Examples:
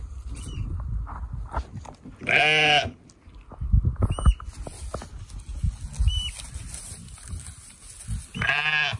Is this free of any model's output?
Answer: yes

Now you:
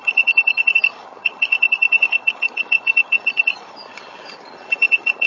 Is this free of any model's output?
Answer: no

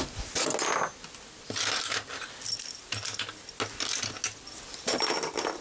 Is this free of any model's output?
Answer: yes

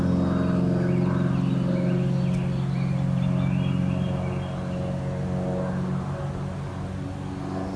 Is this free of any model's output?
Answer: yes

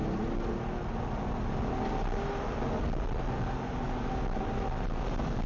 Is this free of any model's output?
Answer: yes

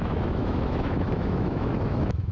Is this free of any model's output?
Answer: no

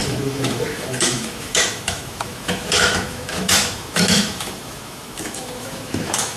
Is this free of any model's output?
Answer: no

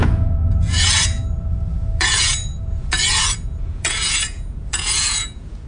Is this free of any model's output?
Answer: no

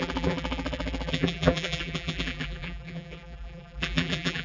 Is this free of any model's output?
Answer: no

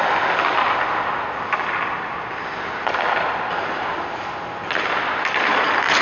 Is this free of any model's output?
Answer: yes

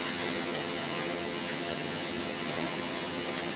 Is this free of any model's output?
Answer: no